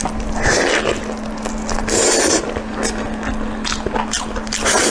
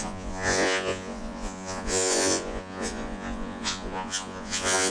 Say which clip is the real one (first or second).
first